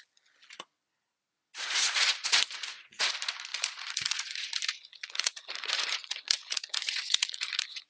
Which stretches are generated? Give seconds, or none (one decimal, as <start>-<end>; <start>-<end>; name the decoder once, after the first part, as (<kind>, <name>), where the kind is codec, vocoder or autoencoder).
1.5-3.1 (vocoder, Vocos); 3.5-4.5; 4.9-7.9